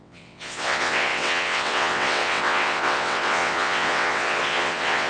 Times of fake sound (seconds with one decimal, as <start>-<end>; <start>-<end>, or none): 0.0-5.1